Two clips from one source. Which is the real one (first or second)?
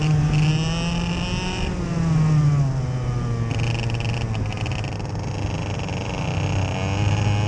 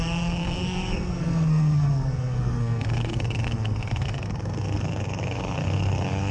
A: first